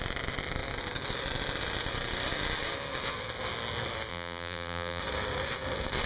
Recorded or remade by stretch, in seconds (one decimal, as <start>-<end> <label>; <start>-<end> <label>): 0.0-4.1 recorded; 4.1-5.0 remade; 5.0-6.1 recorded

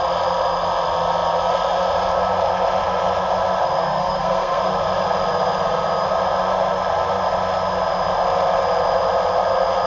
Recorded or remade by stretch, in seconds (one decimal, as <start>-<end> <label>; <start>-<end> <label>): 0.0-3.8 recorded; 3.8-4.7 remade; 4.7-9.9 recorded

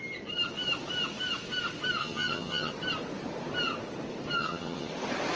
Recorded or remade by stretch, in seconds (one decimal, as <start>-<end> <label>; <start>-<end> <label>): 0.0-2.0 recorded; 2.0-2.7 remade; 2.7-4.4 recorded; 4.4-4.9 remade; 4.9-5.4 recorded